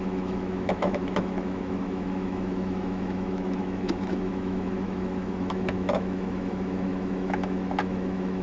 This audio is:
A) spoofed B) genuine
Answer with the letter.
A